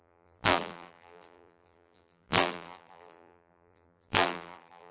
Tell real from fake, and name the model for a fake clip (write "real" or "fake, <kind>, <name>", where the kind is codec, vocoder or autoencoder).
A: fake, vocoder, BigVGAN v2